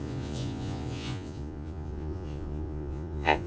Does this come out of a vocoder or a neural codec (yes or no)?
yes